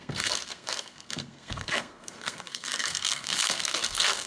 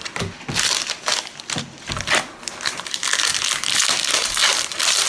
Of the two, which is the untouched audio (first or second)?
second